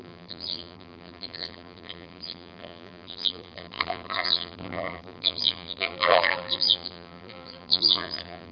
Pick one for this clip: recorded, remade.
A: remade